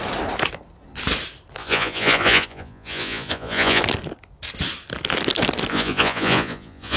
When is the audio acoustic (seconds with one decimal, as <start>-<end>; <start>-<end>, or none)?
0.0-1.6; 3.8-5.7